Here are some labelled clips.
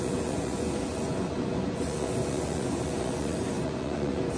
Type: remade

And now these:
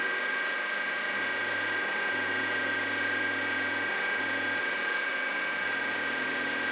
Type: recorded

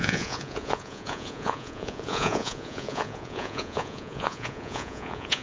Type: remade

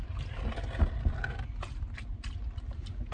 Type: recorded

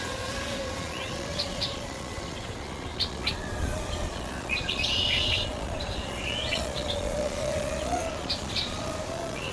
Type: remade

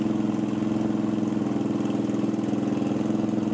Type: recorded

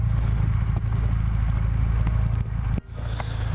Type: recorded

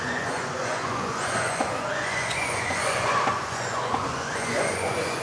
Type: remade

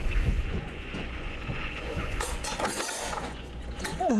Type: remade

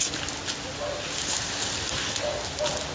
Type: recorded